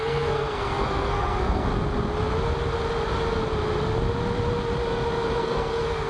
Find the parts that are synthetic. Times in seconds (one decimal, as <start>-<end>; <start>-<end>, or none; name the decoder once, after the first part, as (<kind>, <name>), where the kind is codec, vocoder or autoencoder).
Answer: 0.0-1.7 (codec, SNAC); 5.4-6.1